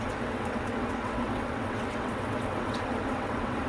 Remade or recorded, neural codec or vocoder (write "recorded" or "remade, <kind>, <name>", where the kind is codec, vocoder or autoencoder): remade, vocoder, WaveNeXt